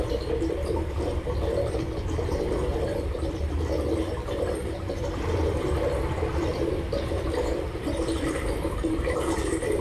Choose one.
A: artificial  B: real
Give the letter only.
A